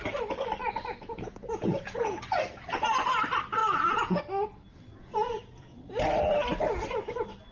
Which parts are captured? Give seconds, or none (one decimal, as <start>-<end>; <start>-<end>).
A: 0.0-0.6; 2.2-3.6; 4.2-4.9; 6.1-7.5